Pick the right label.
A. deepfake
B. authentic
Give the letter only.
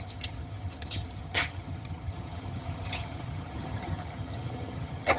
A